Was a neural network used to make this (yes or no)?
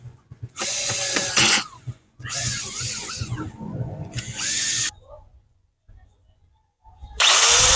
yes